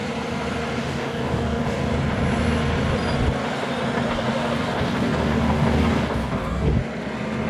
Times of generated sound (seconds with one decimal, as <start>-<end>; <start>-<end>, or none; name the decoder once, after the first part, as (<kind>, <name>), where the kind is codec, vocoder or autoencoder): 0.8-1.8 (codec, DAC); 4.1-6.8